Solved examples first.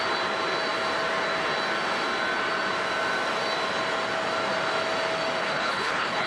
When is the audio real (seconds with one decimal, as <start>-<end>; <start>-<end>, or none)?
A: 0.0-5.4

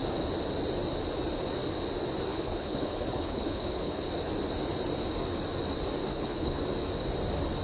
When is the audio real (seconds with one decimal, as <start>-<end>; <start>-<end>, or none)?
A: 0.0-2.3; 4.1-6.1; 6.6-7.6

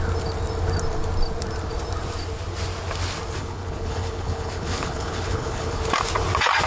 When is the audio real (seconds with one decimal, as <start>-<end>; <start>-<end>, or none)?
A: 0.0-3.4; 5.8-6.7

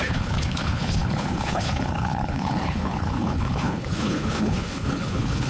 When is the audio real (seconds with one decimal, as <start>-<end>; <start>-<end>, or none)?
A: none

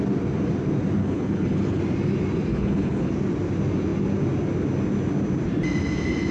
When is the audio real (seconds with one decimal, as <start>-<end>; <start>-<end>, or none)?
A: 0.0-1.0; 1.8-2.5; 3.1-6.3